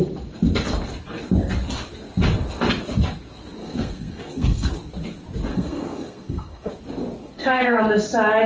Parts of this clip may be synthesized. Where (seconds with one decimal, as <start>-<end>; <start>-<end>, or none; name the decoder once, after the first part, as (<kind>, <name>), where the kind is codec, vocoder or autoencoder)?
3.6-4.7 (codec, SNAC); 5.5-6.7; 7.2-7.8